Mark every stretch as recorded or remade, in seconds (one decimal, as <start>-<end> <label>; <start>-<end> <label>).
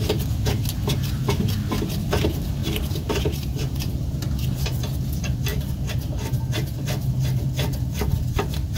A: 0.0-2.6 recorded; 2.6-3.9 remade; 3.9-5.5 recorded; 5.5-6.1 remade; 6.1-8.8 recorded